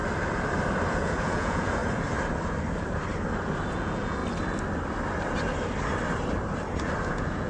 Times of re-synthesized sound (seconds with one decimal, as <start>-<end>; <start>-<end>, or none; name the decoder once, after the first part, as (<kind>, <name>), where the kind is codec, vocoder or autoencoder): 0.9-1.8 (vocoder, Vocos); 3.8-4.2; 7.1-7.5